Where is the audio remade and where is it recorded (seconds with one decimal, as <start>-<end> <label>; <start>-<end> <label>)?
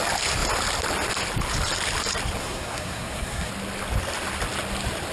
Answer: 0.0-2.4 recorded; 2.4-3.5 remade; 3.5-5.1 recorded